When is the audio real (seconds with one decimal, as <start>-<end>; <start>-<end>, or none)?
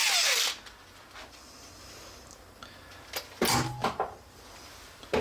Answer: 0.0-3.8; 4.4-5.2